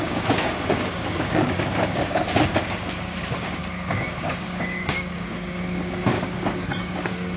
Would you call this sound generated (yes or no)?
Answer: yes